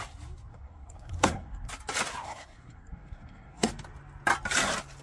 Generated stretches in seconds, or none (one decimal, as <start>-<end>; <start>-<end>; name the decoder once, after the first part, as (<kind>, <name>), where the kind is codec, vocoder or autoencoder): 0.5-1.7 (codec, SNAC); 2.2-3.7